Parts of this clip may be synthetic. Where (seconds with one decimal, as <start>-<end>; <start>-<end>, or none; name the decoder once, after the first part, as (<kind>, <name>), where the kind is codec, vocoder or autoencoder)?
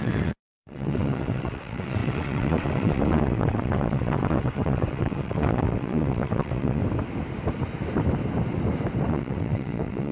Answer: 0.0-6.8 (vocoder, WaveNeXt); 9.1-10.1